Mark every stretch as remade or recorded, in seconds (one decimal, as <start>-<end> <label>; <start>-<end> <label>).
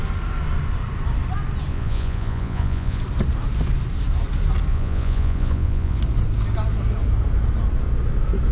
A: 0.0-1.7 recorded; 1.7-3.0 remade; 3.0-4.7 recorded; 4.7-6.0 remade; 6.0-8.5 recorded